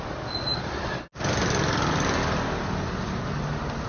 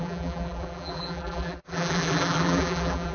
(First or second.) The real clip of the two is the first